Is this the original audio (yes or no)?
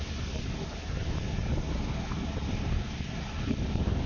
yes